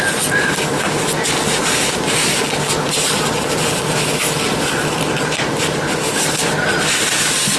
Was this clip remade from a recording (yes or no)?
no